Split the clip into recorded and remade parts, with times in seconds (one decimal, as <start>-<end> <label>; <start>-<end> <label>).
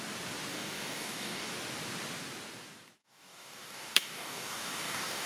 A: 0.0-0.5 recorded; 0.5-1.5 remade; 1.5-3.0 recorded; 3.0-5.3 remade